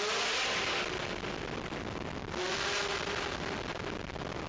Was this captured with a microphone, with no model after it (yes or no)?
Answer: yes